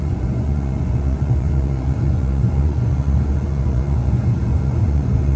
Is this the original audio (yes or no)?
no